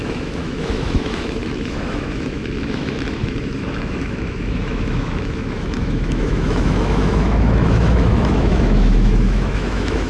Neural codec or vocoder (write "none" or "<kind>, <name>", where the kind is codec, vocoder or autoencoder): autoencoder, DAC-VAE